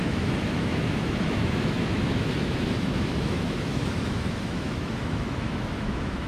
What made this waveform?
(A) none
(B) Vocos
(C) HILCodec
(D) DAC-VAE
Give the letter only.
D